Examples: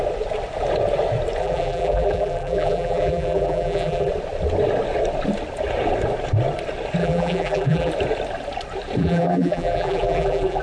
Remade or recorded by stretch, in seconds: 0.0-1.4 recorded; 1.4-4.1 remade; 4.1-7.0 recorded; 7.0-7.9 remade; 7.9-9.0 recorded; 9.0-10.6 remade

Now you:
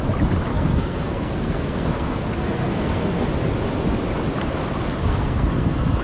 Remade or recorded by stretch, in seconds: 0.0-0.5 recorded; 0.5-3.3 remade; 3.3-5.0 recorded; 5.0-6.0 remade

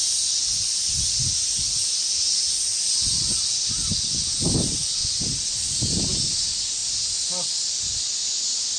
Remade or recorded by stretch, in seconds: 0.0-2.7 recorded; 2.7-3.2 remade; 3.2-6.8 recorded; 6.8-7.6 remade; 7.6-8.8 recorded

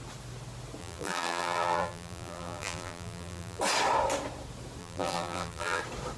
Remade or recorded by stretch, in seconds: 0.0-0.8 recorded; 0.8-3.6 remade; 3.6-4.8 recorded; 4.8-5.8 remade; 5.8-6.2 recorded

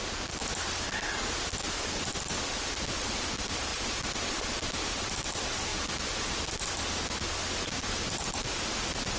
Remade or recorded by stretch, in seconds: 0.0-0.4 remade; 0.4-1.0 recorded; 1.0-6.7 remade; 6.7-8.4 recorded; 8.4-9.2 remade

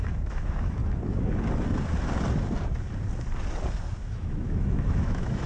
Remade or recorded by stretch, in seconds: 0.0-0.8 remade; 0.8-4.1 recorded; 4.1-5.5 remade